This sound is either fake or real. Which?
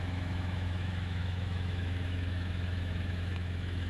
fake